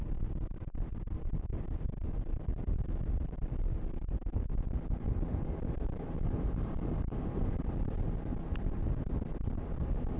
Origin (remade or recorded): recorded